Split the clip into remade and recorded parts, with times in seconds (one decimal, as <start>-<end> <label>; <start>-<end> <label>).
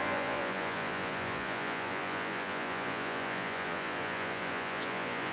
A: 0.0-5.3 remade